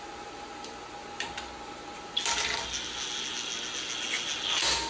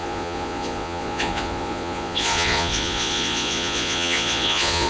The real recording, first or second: first